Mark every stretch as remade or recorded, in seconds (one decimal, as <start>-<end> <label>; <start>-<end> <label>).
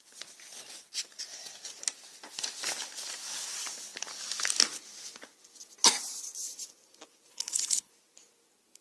0.0-7.3 recorded; 7.3-7.9 remade; 7.9-8.8 recorded